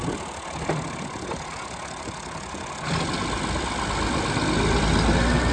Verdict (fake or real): real